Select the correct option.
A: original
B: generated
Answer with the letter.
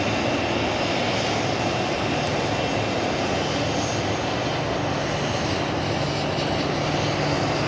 A